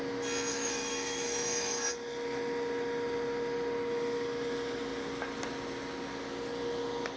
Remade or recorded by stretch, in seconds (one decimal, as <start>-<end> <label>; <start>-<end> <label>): 0.0-0.5 recorded; 0.5-1.9 remade; 1.9-7.2 recorded